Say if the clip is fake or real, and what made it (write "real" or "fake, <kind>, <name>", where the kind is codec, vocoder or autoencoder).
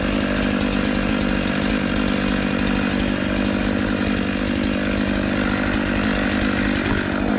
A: real